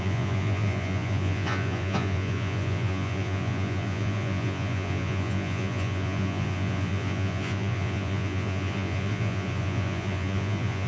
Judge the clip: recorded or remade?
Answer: remade